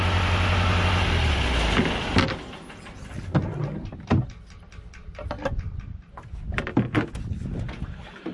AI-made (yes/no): no